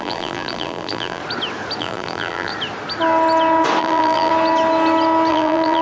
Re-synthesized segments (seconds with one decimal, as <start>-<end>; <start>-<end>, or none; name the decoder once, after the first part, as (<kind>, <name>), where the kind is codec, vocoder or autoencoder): 0.0-1.2 (vocoder, BigVGAN v2); 1.8-2.5; 3.8-4.3; 5.3-5.8